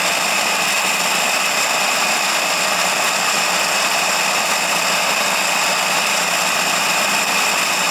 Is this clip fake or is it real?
real